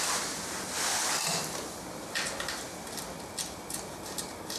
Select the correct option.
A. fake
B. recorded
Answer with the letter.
B